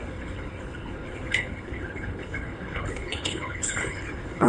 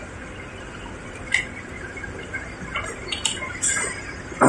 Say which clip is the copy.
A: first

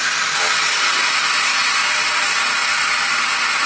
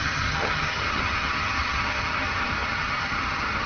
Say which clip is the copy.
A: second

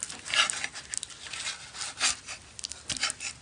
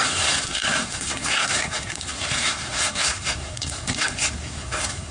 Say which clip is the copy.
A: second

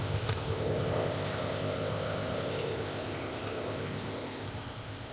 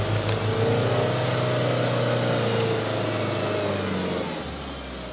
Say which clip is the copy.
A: first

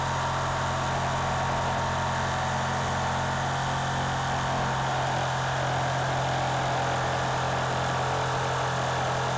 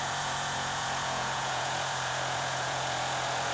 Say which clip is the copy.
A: second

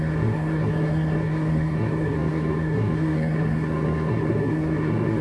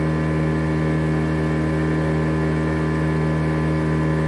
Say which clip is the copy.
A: first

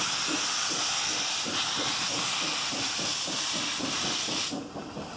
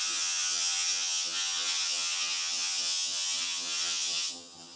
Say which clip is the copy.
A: second